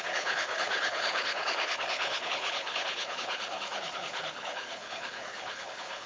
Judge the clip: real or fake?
fake